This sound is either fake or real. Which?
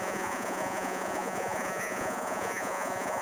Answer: fake